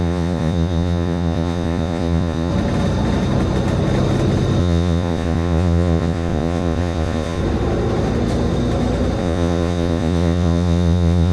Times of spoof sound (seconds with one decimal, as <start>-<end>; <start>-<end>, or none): 0.0-2.5; 4.6-7.4; 9.2-11.3